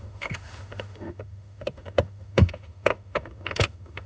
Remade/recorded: remade